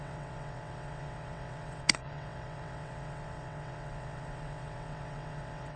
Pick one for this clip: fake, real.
fake